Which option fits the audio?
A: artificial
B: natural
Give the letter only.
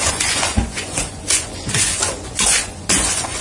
A